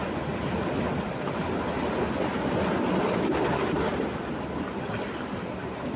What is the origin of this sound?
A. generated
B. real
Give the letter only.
B